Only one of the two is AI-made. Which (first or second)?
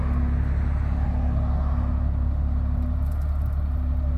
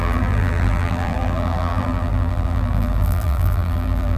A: second